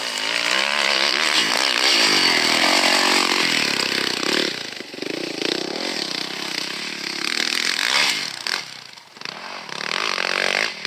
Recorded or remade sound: recorded